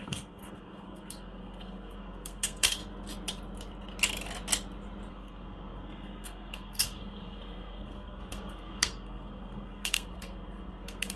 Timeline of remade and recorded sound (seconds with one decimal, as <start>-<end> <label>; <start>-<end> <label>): 0.0-2.8 remade; 2.8-5.1 recorded; 5.1-11.2 remade